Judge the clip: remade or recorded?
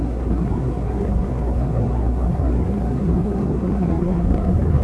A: remade